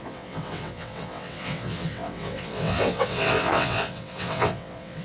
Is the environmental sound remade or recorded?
remade